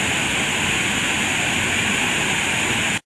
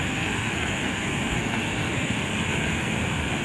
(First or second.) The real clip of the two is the first